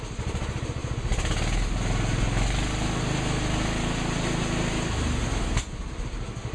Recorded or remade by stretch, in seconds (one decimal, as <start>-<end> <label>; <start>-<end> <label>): 0.0-6.5 recorded